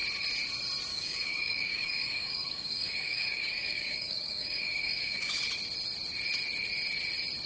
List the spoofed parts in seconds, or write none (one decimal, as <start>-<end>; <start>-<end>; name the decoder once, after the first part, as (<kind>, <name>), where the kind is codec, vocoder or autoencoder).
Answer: 0.9-5.4 (codec, DAC)